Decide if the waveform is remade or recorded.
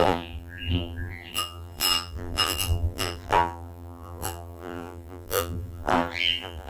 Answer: remade